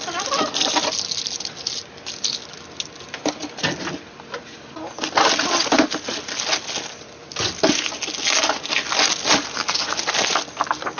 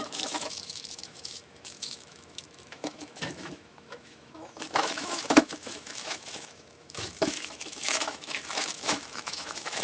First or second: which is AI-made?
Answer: second